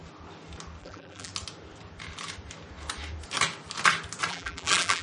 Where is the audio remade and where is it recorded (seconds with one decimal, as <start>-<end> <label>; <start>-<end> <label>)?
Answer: 0.0-0.8 recorded; 0.8-1.3 remade; 1.3-4.3 recorded; 4.3-5.0 remade